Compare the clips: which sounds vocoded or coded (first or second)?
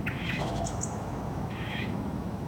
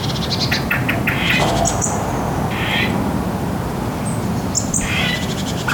first